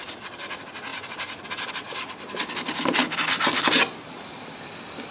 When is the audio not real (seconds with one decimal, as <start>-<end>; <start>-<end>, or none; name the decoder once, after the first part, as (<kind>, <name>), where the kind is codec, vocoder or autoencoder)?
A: 0.0-0.9 (vocoder, BigVGAN v2); 1.7-3.0; 4.0-5.1